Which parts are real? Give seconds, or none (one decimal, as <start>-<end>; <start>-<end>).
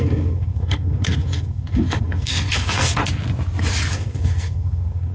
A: 3.0-3.9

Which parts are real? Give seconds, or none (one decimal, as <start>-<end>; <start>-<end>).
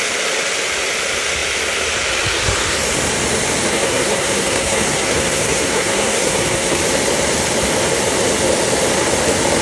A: 0.0-3.7; 6.8-9.6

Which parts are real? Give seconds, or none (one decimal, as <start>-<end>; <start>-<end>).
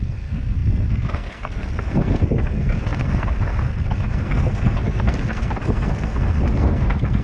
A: none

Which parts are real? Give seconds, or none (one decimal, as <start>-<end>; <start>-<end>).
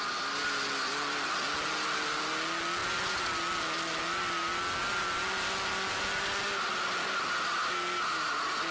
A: 0.0-8.7